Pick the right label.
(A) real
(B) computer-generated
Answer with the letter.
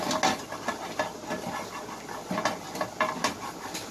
A